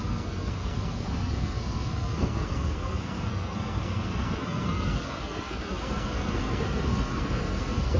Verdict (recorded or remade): remade